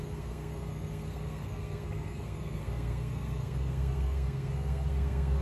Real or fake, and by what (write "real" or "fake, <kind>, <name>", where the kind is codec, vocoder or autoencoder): fake, codec, SNAC